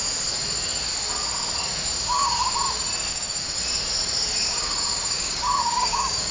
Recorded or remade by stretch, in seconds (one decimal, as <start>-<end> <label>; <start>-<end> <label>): 0.0-1.8 recorded; 1.8-2.4 remade; 2.4-3.1 recorded; 3.1-3.6 remade; 3.6-4.4 recorded; 4.4-6.3 remade